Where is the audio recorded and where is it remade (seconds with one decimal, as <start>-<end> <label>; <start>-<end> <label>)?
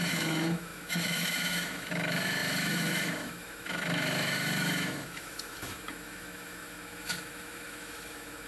0.0-8.5 remade